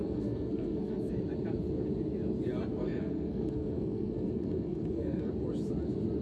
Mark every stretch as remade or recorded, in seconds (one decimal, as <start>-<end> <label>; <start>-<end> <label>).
0.0-1.1 remade; 1.1-2.7 recorded; 2.7-5.3 remade; 5.3-6.2 recorded